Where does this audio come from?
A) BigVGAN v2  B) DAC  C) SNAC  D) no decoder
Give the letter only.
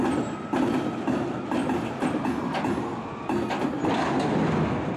D